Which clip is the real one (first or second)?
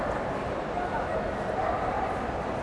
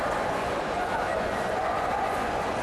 first